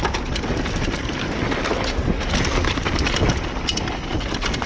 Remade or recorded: recorded